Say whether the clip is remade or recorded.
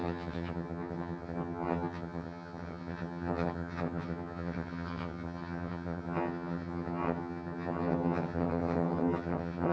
remade